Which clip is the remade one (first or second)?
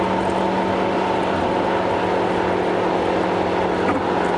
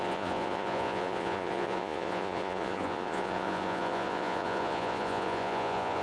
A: second